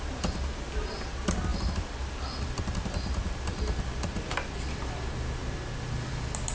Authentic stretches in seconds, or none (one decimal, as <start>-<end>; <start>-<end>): 0.0-6.5